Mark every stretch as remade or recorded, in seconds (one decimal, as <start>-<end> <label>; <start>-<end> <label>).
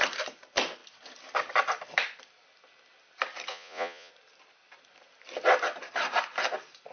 0.0-3.5 recorded; 3.5-4.1 remade; 4.1-6.9 recorded